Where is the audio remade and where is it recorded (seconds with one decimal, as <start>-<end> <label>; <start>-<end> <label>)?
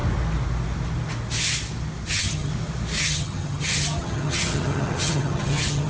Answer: 0.0-2.1 recorded; 2.1-2.5 remade; 2.5-3.0 recorded; 3.0-5.9 remade